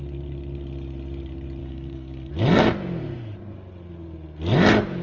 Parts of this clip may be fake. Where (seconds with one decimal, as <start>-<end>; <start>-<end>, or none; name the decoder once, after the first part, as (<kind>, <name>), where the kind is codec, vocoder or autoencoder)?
1.6-2.3 (codec, DAC)